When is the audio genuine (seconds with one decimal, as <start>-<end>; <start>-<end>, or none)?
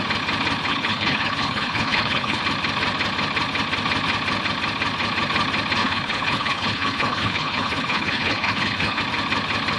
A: 0.0-0.7; 2.4-5.8; 9.0-9.8